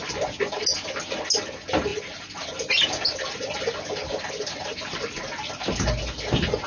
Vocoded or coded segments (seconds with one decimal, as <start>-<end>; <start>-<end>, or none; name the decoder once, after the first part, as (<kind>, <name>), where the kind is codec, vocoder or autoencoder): none